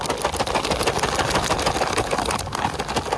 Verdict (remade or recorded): recorded